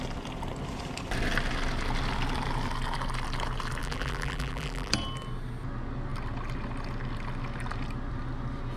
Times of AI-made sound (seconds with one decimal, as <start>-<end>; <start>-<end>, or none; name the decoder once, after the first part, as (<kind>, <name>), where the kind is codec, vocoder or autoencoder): 3.8-4.9 (vocoder, BigVGAN v2)